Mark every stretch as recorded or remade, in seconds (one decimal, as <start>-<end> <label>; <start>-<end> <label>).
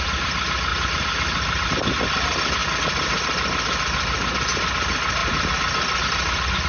0.0-6.7 recorded